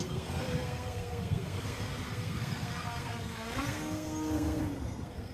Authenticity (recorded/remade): remade